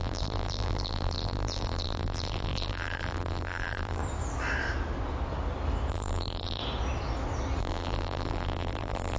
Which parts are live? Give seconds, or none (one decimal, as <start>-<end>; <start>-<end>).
4.0-5.9; 6.6-7.6

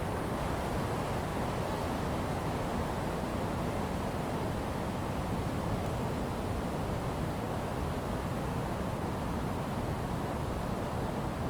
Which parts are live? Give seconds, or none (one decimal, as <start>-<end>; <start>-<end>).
0.0-11.5

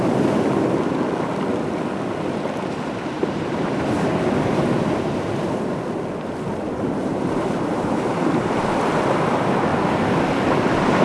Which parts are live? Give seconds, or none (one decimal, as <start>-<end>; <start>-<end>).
0.0-3.2; 4.6-7.0; 8.6-11.0